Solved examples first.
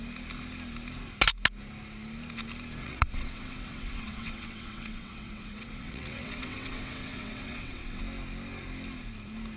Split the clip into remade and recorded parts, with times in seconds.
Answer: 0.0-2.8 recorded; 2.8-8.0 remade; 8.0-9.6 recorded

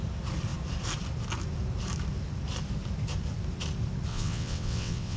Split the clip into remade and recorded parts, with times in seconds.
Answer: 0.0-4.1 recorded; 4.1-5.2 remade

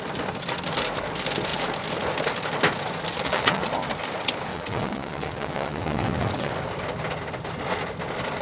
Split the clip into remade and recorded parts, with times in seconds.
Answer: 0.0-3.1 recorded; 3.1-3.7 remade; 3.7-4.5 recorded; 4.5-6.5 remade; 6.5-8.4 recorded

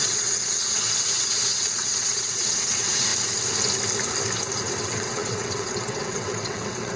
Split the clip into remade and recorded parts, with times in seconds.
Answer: 0.0-3.1 remade; 3.1-4.7 recorded; 4.7-7.0 remade